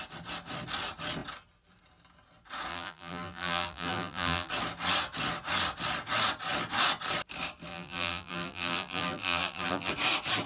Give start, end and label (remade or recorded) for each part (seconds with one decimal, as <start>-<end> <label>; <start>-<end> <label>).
0.0-2.7 recorded; 2.7-4.5 remade; 4.5-7.7 recorded; 7.7-9.9 remade; 9.9-10.5 recorded